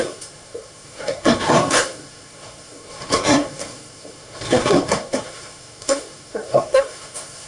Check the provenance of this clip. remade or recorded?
remade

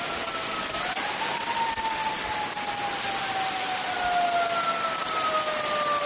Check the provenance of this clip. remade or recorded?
recorded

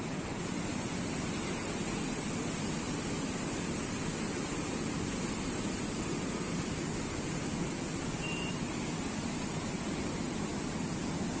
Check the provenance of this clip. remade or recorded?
recorded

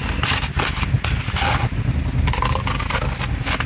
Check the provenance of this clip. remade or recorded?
recorded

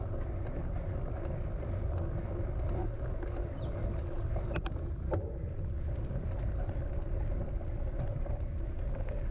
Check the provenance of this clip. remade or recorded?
recorded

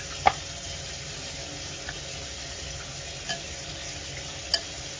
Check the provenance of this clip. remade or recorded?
recorded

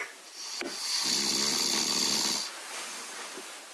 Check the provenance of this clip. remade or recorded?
recorded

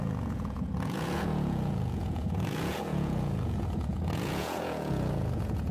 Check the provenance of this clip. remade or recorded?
remade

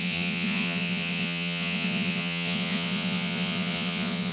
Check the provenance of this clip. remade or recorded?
remade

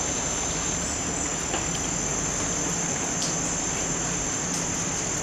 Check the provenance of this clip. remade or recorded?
recorded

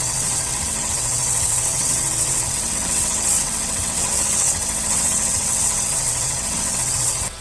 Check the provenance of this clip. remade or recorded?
remade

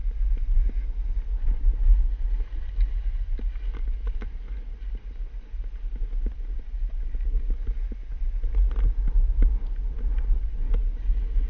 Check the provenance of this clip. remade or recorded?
recorded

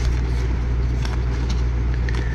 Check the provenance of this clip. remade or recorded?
recorded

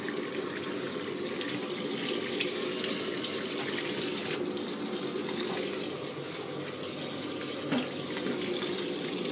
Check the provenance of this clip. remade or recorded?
recorded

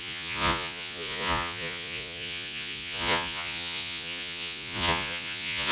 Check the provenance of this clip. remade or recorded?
remade